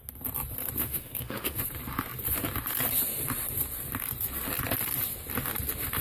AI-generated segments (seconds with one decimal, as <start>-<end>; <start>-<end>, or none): 0.8-1.6